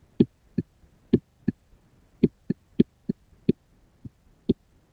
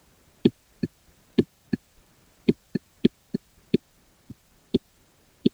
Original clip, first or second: first